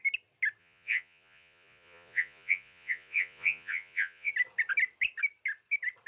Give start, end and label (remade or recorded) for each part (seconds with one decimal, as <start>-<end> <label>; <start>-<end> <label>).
0.0-0.6 recorded; 0.6-4.3 remade; 4.3-6.1 recorded